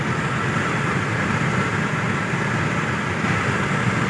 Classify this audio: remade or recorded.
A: recorded